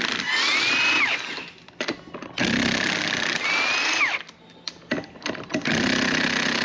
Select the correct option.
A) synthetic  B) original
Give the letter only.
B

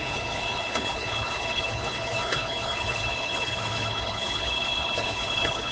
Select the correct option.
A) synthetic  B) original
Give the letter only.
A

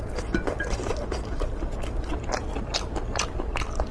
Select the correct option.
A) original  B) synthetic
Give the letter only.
A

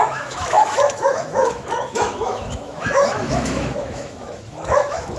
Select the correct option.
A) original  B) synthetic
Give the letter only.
B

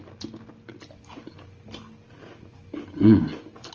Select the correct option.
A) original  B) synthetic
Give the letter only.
A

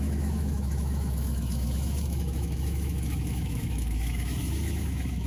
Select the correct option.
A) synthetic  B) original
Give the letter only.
A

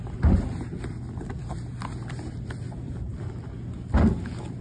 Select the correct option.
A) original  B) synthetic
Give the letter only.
A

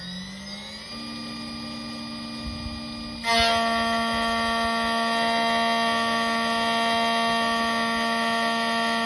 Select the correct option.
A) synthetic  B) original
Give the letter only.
B